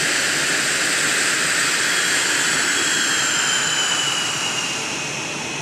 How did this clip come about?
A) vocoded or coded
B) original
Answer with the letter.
B